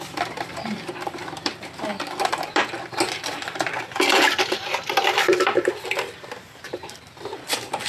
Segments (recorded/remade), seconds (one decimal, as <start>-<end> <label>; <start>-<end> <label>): 0.0-7.9 remade